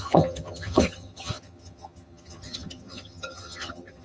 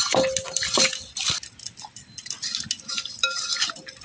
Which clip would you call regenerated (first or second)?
first